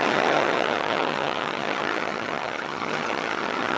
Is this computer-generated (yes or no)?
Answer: yes